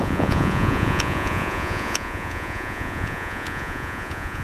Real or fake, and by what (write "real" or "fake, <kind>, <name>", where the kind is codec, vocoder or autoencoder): fake, vocoder, Vocos